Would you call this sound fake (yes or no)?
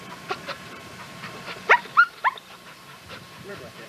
yes